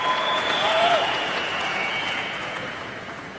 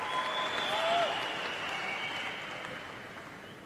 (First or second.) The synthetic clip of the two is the first